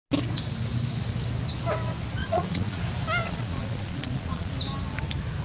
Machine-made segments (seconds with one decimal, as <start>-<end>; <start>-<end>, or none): 2.2-2.8; 3.2-4.5